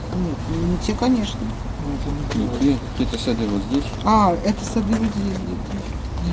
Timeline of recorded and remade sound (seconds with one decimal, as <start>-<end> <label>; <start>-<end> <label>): 0.0-6.3 recorded